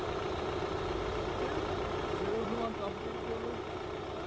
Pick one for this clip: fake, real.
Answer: real